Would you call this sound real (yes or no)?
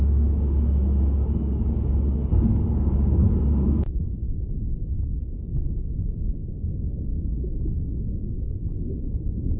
no